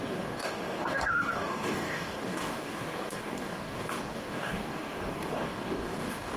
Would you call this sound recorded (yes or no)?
no